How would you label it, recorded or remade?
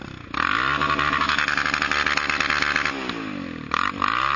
recorded